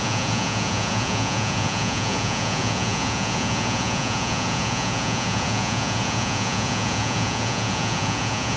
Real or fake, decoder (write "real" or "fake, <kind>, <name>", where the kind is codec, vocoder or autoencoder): fake, vocoder, Vocos